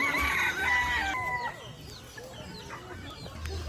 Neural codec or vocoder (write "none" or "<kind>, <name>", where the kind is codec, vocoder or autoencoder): none